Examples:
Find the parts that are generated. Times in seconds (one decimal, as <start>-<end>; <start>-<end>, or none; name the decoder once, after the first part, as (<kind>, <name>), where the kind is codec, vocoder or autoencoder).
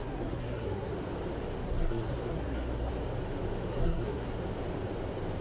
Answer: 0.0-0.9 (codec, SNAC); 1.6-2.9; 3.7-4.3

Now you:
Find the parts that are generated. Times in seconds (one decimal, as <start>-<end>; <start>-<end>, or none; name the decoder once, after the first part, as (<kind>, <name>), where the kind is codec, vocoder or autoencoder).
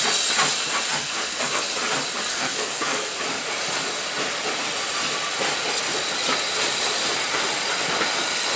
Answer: 1.0-1.6 (codec, SNAC); 2.3-3.2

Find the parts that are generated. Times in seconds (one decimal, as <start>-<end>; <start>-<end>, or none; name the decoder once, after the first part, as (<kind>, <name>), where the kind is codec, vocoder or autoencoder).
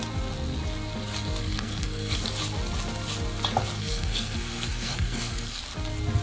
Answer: 1.4-2.2 (codec, SNAC); 3.8-5.6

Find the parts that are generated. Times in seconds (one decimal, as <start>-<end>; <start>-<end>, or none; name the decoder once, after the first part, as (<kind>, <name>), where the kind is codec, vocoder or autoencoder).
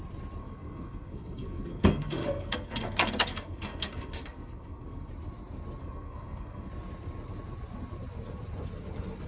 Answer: 0.4-5.1 (codec, SNAC); 5.8-6.7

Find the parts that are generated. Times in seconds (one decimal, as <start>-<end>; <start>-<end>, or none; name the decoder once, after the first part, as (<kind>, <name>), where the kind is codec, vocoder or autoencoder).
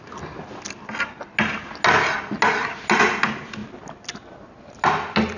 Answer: none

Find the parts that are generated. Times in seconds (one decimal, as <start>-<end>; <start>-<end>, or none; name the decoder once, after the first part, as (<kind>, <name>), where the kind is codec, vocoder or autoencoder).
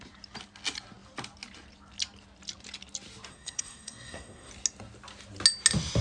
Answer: 3.3-4.5 (codec, SNAC)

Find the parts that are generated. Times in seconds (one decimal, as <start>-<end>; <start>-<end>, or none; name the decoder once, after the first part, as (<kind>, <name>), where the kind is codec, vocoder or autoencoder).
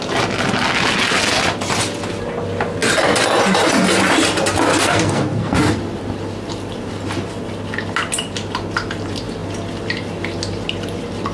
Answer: 4.7-5.8 (codec, SNAC)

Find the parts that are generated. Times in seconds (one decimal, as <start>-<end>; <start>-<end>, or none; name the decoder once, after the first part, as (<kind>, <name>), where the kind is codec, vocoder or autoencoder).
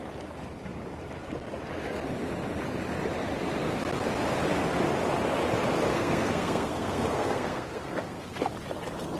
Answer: 5.9-8.4 (codec, SNAC)